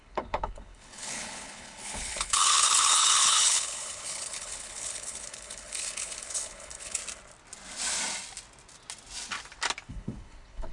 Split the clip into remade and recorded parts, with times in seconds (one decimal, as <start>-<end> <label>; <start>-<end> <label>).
0.0-7.0 remade; 7.0-9.9 recorded; 9.9-10.7 remade